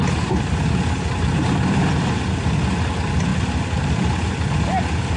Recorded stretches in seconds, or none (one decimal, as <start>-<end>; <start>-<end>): 0.0-5.2